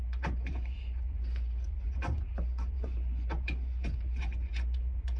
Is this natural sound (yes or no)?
no